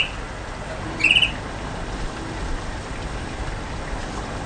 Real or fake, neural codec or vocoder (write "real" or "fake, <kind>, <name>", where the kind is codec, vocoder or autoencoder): real